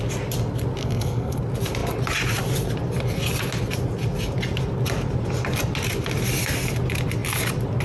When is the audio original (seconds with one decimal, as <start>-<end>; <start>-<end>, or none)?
0.0-0.8; 1.4-7.8